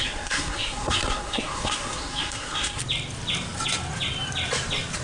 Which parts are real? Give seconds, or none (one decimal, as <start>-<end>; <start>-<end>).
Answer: 2.8-5.0